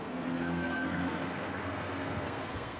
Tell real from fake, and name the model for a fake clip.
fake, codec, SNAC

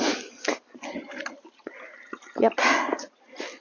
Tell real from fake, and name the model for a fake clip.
real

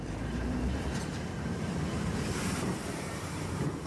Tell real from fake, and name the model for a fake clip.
fake, vocoder, BigVGAN v2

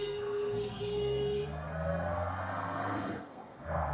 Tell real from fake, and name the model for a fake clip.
fake, codec, SNAC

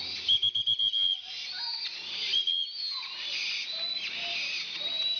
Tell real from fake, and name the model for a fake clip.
real